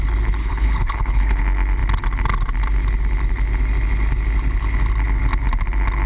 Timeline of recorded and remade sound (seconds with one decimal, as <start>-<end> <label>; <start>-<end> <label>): 0.0-0.4 recorded; 0.4-1.4 remade; 1.4-6.1 recorded